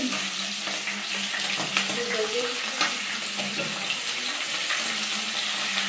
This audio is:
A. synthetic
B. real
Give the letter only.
B